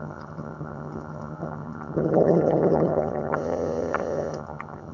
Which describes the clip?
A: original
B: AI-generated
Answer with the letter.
B